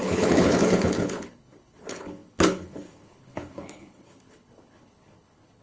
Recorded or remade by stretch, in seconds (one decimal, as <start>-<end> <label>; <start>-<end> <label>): 0.0-5.6 remade

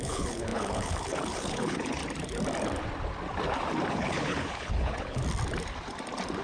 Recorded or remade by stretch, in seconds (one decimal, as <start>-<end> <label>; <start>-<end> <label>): 0.0-2.0 remade; 2.0-3.9 recorded; 3.9-5.2 remade; 5.2-6.4 recorded

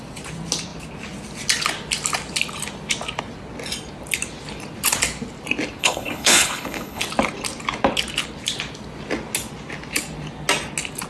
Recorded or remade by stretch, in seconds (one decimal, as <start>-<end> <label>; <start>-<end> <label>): 0.0-5.8 recorded; 5.8-7.0 remade; 7.0-11.1 recorded

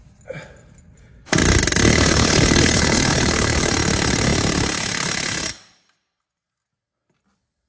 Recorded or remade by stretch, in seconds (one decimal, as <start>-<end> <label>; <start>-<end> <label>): 0.0-1.9 recorded; 1.9-3.7 remade; 3.7-7.7 recorded